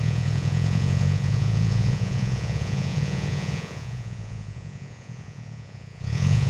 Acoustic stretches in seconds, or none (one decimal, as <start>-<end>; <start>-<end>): none